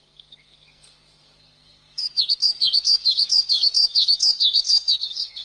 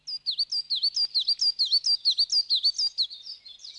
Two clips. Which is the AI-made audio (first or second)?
first